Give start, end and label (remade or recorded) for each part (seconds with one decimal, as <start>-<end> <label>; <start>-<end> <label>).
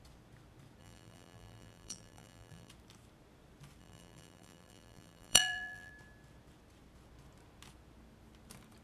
0.0-0.8 recorded; 0.8-2.7 remade; 2.7-3.8 recorded; 3.8-5.9 remade; 5.9-8.8 recorded